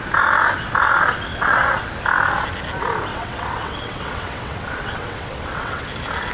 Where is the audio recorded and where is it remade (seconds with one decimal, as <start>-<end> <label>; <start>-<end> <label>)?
0.0-1.3 recorded; 1.3-1.9 remade; 1.9-3.1 recorded; 3.1-5.8 remade; 5.8-6.3 recorded